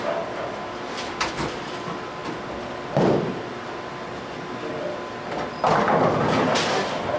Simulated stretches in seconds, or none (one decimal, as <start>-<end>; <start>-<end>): none